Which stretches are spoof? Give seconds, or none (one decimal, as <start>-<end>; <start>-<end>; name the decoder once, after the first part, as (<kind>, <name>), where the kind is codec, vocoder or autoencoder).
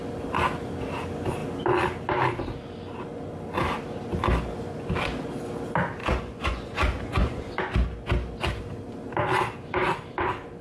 6.0-7.6 (vocoder, Vocos)